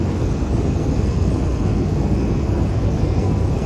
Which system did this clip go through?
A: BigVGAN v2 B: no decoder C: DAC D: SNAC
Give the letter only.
D